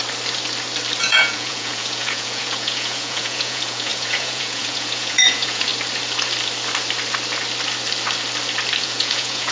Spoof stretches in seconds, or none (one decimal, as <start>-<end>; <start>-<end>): 1.0-5.7; 8.8-9.5